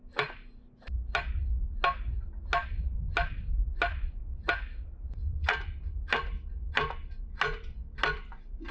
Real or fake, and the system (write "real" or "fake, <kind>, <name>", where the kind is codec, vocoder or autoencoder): real